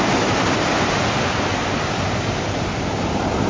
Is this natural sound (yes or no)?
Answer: yes